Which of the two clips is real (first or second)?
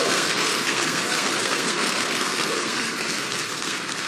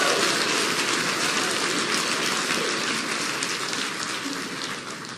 second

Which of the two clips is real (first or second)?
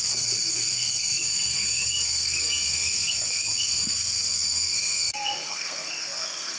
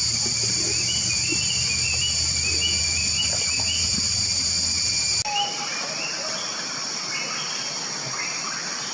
second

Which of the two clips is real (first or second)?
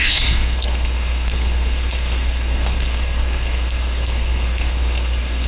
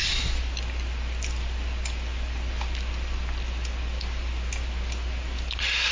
second